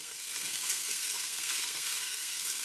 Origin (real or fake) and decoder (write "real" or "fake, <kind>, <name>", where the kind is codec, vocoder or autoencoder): fake, codec, SNAC